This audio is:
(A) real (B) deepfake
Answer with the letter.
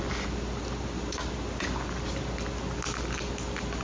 A